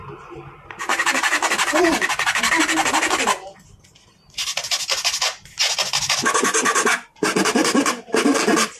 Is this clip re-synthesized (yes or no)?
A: no